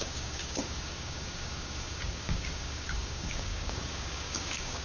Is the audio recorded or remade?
remade